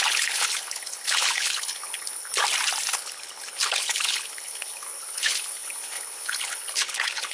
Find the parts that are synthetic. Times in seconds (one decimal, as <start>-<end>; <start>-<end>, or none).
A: 0.0-2.3; 2.9-7.3